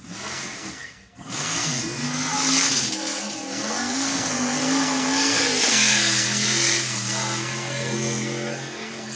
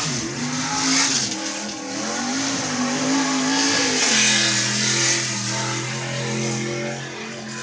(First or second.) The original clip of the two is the second